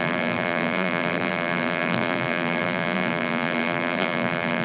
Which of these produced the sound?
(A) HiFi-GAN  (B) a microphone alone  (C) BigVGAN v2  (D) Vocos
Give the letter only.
C